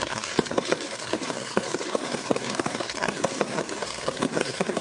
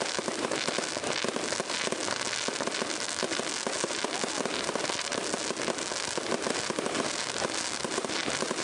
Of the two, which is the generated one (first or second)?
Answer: first